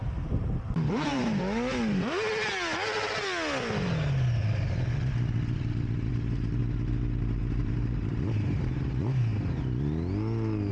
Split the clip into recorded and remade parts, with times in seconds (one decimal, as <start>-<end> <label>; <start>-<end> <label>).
0.0-1.2 remade; 1.2-6.1 recorded; 6.1-6.6 remade; 6.6-7.6 recorded; 7.6-9.3 remade; 9.3-10.7 recorded